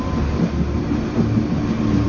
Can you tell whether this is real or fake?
real